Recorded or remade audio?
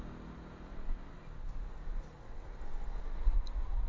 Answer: recorded